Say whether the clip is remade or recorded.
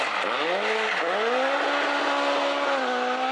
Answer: recorded